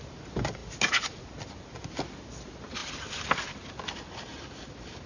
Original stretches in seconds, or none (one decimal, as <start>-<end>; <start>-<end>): 0.0-5.1